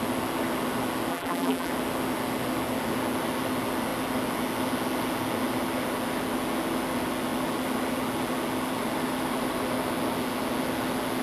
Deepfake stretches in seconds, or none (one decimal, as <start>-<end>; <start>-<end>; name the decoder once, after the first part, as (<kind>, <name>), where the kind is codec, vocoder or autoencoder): 1.1-1.7 (vocoder, BigVGAN v2)